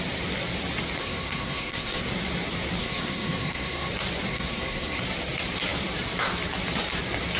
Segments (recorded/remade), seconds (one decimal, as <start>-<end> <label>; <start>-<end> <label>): 0.0-1.0 recorded; 1.0-2.0 remade; 2.0-2.8 recorded; 2.8-3.9 remade; 3.9-4.3 recorded; 4.3-5.0 remade; 5.0-7.4 recorded